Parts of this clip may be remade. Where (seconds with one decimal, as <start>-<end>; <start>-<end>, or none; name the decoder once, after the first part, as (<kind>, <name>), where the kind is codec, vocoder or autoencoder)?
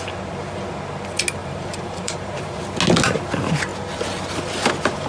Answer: 1.4-2.6 (vocoder, BigVGAN v2)